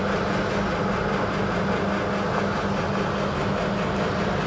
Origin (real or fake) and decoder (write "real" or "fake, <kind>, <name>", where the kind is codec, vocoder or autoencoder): real